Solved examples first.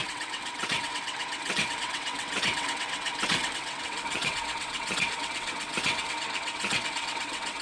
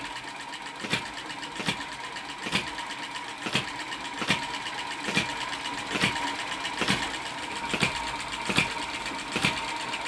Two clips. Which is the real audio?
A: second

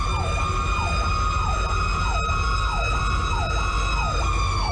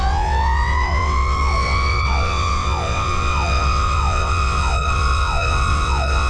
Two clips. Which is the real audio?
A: first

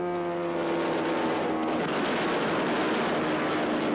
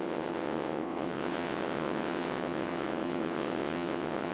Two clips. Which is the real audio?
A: first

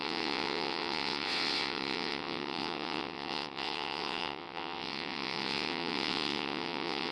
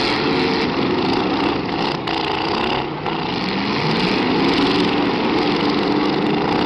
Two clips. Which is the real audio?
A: second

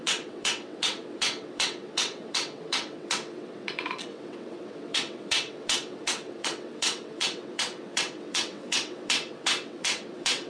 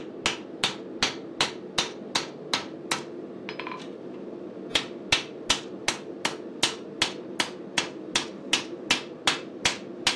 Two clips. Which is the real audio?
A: second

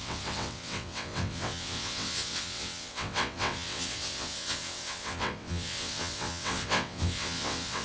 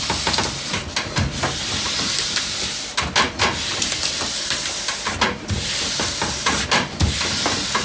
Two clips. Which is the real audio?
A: second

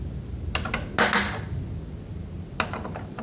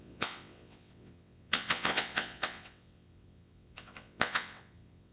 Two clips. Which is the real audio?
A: first